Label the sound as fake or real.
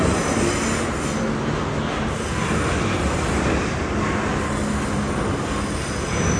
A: real